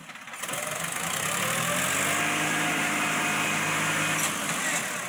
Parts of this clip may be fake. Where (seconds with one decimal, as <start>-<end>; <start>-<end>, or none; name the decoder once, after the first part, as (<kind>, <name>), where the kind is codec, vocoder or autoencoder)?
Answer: none